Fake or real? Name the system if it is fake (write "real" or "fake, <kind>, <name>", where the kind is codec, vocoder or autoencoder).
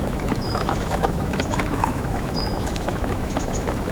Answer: fake, autoencoder, DAC-VAE